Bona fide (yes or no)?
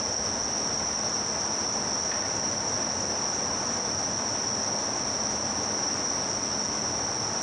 yes